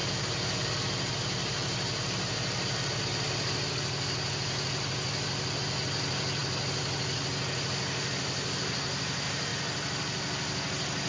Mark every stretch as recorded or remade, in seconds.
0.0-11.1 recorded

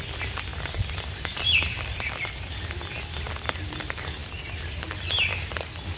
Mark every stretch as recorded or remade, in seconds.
0.0-0.5 recorded; 0.5-3.2 remade; 3.2-6.0 recorded

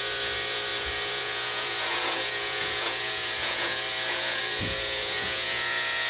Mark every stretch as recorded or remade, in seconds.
0.0-6.1 remade

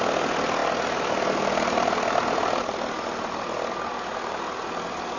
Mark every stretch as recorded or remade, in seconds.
0.0-5.2 recorded